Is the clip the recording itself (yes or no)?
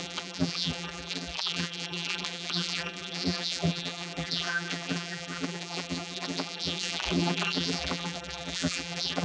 no